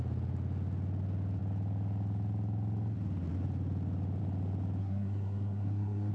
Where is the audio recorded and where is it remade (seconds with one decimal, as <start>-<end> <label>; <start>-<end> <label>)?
0.0-4.8 recorded; 4.8-6.1 remade